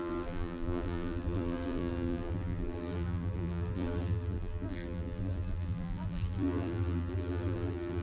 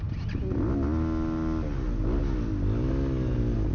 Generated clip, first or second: first